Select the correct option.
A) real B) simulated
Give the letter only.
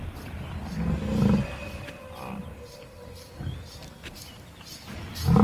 A